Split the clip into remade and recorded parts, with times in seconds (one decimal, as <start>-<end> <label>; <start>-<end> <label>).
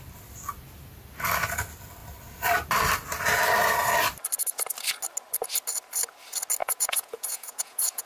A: 0.0-6.6 recorded; 6.6-8.1 remade